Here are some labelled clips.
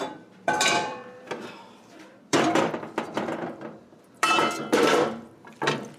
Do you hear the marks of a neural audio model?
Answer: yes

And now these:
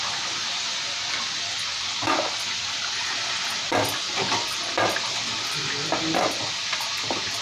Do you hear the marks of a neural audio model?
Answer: no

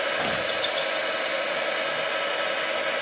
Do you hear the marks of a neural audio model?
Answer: no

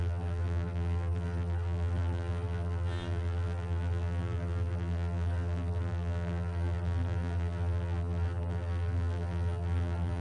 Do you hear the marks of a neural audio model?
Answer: yes